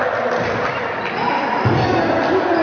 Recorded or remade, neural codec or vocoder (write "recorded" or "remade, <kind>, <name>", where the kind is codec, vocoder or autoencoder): recorded